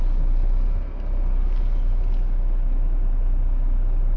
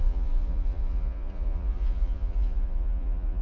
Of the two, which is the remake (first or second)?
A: second